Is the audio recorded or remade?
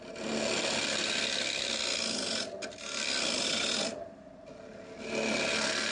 recorded